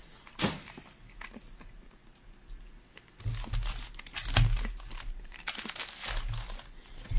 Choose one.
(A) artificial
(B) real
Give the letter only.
B